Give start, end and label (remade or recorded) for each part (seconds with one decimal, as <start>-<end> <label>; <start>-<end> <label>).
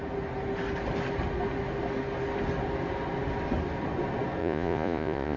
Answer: 0.0-4.4 recorded; 4.4-5.4 remade